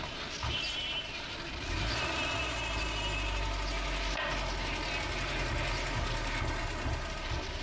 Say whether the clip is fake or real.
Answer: real